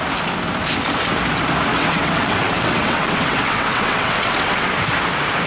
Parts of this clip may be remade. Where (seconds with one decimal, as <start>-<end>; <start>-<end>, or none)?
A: 1.7-4.7